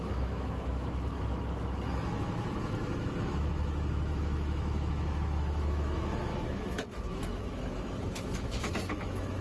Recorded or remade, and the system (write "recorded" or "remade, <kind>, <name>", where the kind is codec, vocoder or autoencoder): remade, autoencoder, DAC-VAE